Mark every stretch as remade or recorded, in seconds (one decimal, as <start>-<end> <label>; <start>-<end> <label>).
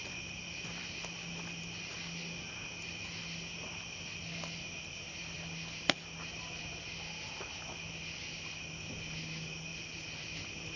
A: 0.0-10.8 recorded